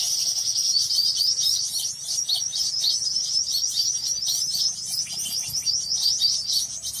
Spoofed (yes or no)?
no